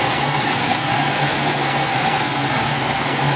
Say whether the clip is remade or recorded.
remade